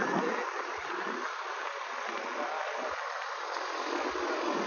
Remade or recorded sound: recorded